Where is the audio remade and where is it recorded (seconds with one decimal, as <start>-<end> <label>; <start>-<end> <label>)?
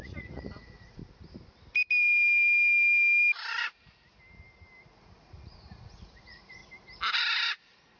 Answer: 0.0-1.0 remade; 1.0-4.9 recorded; 4.9-6.6 remade; 6.6-7.6 recorded; 7.6-8.0 remade